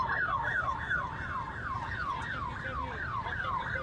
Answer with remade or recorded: remade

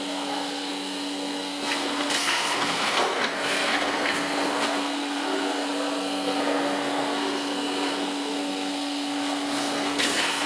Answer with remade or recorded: remade